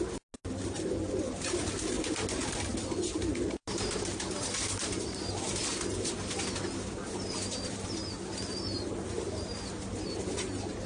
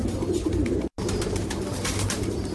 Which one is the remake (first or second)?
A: second